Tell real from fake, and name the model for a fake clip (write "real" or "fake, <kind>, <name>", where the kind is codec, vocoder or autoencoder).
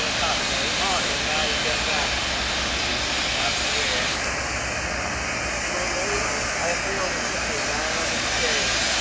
real